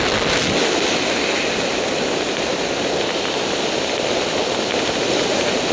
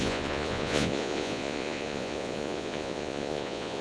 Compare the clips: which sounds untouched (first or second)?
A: first